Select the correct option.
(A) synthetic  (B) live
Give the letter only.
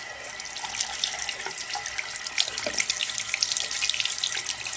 B